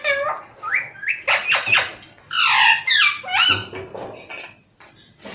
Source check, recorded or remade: recorded